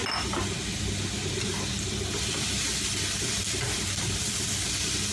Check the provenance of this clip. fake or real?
real